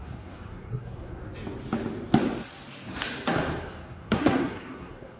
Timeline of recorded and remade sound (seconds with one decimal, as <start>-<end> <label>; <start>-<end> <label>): 0.0-1.2 remade; 1.2-3.6 recorded; 3.6-5.2 remade

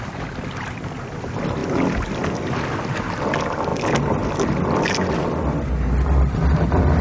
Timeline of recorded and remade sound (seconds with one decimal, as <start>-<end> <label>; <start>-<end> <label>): 0.0-7.0 recorded

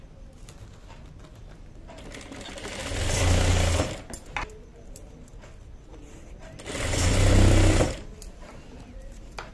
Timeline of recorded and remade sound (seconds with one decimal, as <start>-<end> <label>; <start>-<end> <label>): 0.0-2.8 recorded; 2.8-3.5 remade; 3.5-5.9 recorded; 5.9-9.5 remade

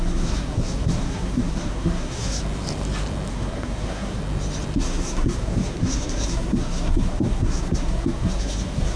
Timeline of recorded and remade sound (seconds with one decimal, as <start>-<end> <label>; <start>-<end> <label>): 0.0-2.4 remade; 2.4-3.3 recorded; 3.3-4.2 remade; 4.2-4.8 recorded; 4.8-9.0 remade

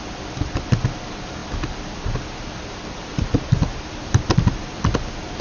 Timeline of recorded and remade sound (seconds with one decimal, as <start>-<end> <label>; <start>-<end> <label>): 0.0-5.4 recorded

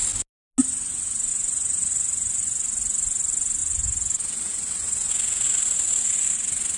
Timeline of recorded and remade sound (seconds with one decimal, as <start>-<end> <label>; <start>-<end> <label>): 0.0-1.3 recorded; 1.3-1.9 remade; 1.9-3.6 recorded; 3.6-5.1 remade; 5.1-6.8 recorded

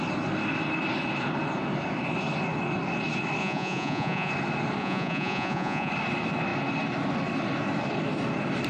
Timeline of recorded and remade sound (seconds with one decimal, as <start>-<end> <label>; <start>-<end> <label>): 0.0-3.4 recorded; 3.4-4.3 remade; 4.3-4.8 recorded; 4.8-5.9 remade; 5.9-8.7 recorded